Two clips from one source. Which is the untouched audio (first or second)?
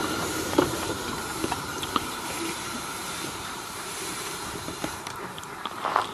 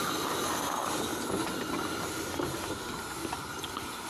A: second